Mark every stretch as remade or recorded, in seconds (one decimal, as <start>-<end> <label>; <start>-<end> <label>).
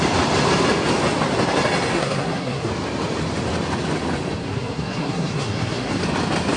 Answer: 0.0-1.9 recorded; 1.9-2.7 remade; 2.7-4.4 recorded; 4.4-6.0 remade; 6.0-6.6 recorded